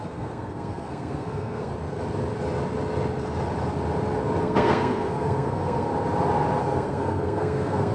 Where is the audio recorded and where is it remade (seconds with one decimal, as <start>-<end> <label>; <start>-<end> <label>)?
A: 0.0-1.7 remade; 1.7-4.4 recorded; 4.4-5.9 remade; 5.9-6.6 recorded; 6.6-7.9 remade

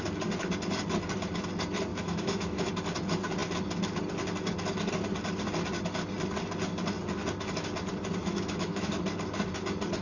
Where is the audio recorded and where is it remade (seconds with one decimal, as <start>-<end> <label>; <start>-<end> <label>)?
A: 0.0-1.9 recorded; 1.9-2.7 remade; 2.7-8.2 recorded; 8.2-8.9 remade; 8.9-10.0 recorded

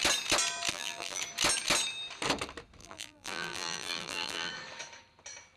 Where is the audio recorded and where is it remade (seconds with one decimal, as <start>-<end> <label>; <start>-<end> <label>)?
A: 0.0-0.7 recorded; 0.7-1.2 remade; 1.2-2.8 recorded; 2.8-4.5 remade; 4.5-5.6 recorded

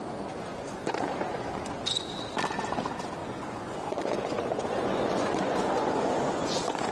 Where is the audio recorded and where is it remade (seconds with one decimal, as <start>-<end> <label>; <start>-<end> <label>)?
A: 0.0-0.5 recorded; 0.5-2.1 remade; 2.1-3.2 recorded; 3.2-6.9 remade